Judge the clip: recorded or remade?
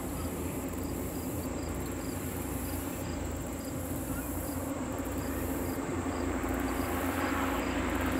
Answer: remade